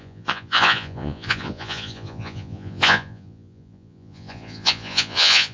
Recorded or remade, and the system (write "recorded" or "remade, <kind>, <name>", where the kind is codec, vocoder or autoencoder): remade, vocoder, Vocos